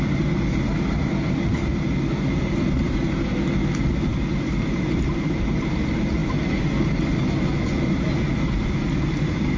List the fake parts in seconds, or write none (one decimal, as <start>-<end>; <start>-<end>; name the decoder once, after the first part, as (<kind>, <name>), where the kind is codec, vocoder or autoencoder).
none